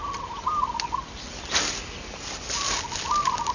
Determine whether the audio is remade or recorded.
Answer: recorded